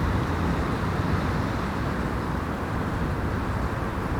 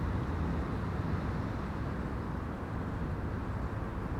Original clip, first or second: second